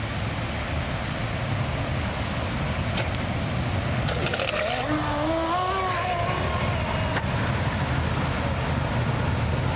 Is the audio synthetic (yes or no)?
no